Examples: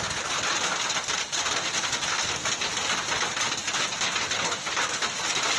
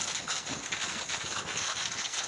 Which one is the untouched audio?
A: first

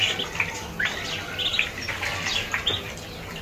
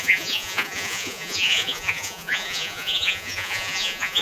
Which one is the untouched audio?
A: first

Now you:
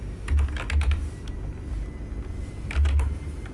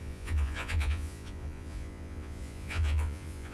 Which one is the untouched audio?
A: first